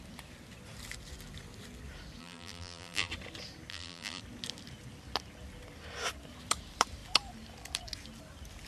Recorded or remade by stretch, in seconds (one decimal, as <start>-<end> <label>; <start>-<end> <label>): 0.0-2.2 recorded; 2.2-3.1 remade; 3.1-3.7 recorded; 3.7-4.2 remade; 4.2-8.7 recorded